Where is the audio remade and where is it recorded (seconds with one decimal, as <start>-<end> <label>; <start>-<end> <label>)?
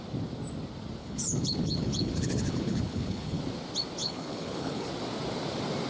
0.0-1.0 recorded; 1.0-3.4 remade; 3.4-4.0 recorded; 4.0-4.9 remade; 4.9-5.9 recorded